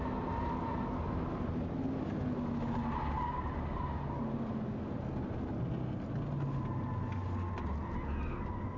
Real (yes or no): yes